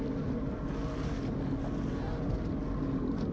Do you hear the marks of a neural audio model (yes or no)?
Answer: no